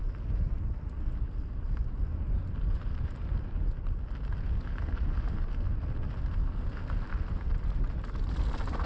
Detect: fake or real real